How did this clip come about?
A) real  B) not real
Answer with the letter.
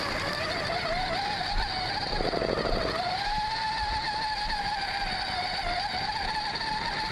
A